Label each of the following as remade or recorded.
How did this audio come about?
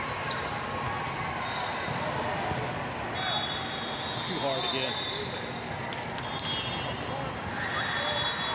recorded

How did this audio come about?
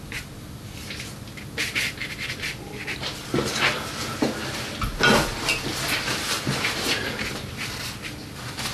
recorded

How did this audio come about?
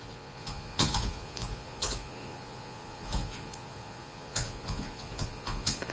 remade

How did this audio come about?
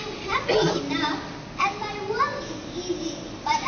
recorded